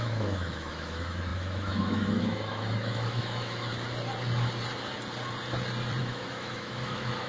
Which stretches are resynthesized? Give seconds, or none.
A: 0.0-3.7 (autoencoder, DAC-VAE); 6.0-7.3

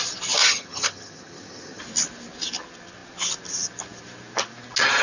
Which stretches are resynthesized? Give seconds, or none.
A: 0.4-1.8 (vocoder, HiFi-GAN)

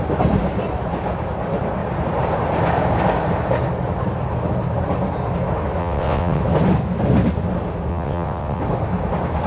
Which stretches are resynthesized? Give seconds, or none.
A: 5.8-6.4 (vocoder, WaveNeXt); 7.9-8.6

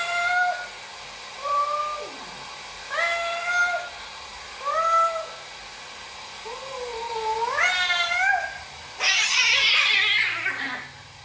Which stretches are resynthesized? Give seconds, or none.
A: none

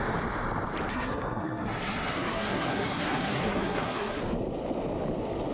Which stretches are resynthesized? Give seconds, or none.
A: 0.9-4.2 (codec, SNAC)